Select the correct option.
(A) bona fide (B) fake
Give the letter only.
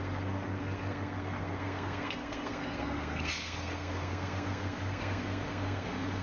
B